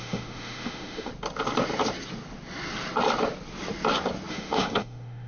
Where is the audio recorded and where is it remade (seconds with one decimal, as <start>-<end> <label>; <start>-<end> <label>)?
0.0-1.1 remade; 1.1-4.3 recorded; 4.3-5.3 remade